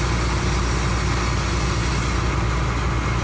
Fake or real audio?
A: real